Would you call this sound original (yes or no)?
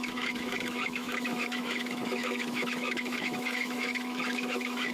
no